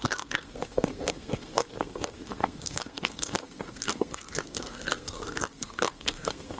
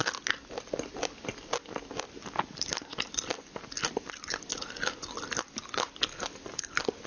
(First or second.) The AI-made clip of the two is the first